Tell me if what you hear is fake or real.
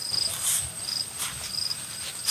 real